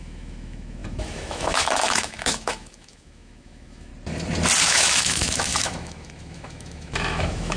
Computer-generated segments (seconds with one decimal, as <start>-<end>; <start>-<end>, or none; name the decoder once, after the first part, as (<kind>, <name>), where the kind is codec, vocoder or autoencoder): 0.0-3.9 (autoencoder, DAC-VAE); 4.6-7.6